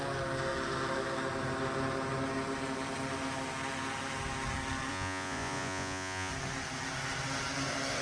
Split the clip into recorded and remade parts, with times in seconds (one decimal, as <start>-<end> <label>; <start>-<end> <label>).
0.0-4.9 recorded; 4.9-6.3 remade; 6.3-8.0 recorded